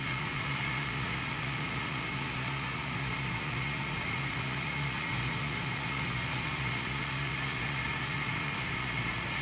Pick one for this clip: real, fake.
fake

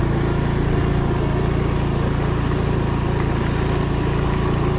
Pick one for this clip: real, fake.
real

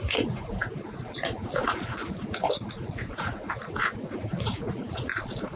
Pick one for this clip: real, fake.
fake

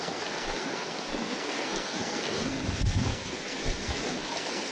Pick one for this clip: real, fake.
fake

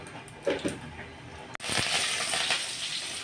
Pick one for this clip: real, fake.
real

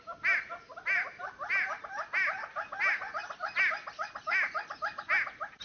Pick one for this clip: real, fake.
real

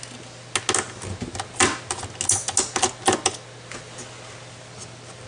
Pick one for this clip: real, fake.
real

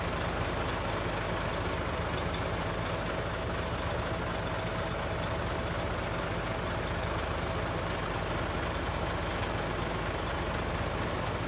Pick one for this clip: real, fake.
real